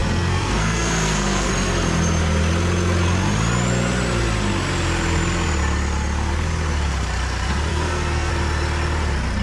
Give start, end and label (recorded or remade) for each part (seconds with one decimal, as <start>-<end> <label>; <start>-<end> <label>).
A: 0.0-1.5 remade; 1.5-7.7 recorded; 7.7-8.3 remade; 8.3-9.4 recorded